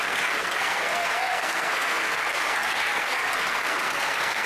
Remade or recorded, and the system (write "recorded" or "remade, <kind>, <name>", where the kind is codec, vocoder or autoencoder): remade, codec, SNAC